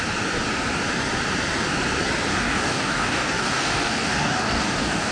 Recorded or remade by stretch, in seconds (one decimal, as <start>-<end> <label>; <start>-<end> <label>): 0.0-2.3 recorded; 2.3-5.1 remade